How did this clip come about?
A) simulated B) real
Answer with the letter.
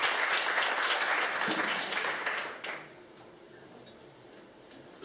B